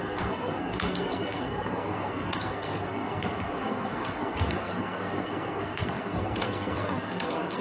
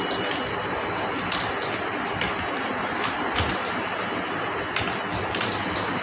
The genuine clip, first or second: second